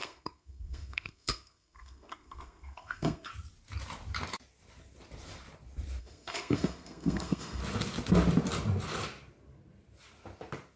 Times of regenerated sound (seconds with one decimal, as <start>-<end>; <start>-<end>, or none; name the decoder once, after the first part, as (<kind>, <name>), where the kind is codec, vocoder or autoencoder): 0.0-3.3 (codec, SNAC); 6.0-7.6